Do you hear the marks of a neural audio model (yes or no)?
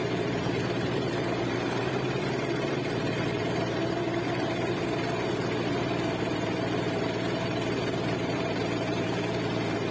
yes